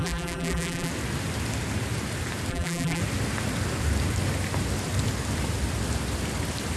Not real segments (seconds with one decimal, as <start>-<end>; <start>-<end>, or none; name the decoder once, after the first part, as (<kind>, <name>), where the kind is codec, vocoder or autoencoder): 0.0-0.9 (vocoder, BigVGAN v2); 2.5-3.0